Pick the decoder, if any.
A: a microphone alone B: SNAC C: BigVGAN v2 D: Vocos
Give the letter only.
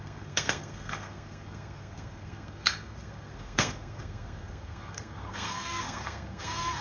B